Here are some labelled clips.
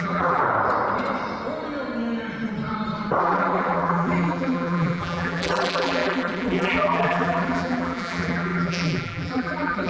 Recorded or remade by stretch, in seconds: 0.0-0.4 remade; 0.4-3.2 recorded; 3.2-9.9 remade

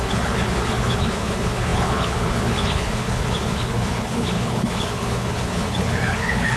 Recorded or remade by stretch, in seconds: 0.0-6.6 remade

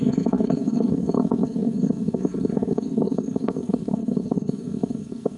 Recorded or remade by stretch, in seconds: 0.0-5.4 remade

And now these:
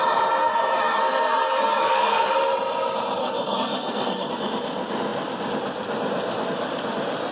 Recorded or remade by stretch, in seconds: 0.0-0.4 recorded; 0.4-2.3 remade; 2.3-3.2 recorded; 3.2-4.3 remade; 4.3-7.3 recorded

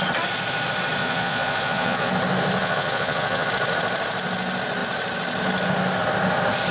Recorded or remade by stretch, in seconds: 0.0-1.0 recorded; 1.0-2.1 remade; 2.1-2.6 recorded; 2.6-3.5 remade; 3.5-6.7 recorded

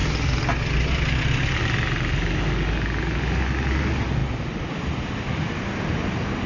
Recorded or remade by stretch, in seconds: 0.0-6.5 recorded

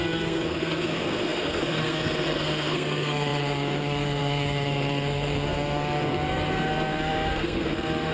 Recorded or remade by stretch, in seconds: 0.0-8.1 remade

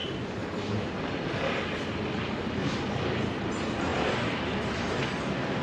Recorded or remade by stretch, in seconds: 0.0-3.9 recorded; 3.9-4.8 remade; 4.8-5.6 recorded